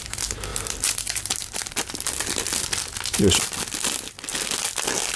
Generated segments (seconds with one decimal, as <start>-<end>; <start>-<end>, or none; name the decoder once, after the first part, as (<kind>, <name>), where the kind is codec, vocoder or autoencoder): 0.5-3.6 (vocoder, BigVGAN v2)